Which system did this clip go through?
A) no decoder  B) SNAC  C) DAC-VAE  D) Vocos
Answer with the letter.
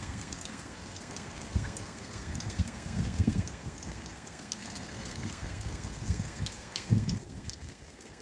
B